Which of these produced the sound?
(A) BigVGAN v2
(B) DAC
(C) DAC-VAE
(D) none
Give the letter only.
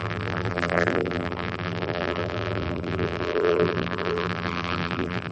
A